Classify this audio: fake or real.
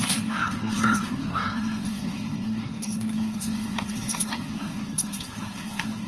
fake